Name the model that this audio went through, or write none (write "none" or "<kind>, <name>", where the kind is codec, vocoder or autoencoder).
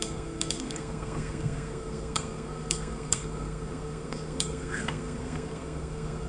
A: codec, SNAC